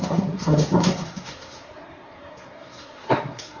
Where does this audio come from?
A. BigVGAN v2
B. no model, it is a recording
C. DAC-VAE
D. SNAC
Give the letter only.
D